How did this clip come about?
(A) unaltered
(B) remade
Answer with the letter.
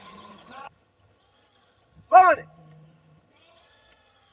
B